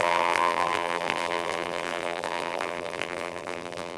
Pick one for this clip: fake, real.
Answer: fake